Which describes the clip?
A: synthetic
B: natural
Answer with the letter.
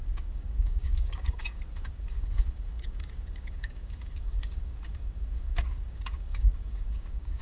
A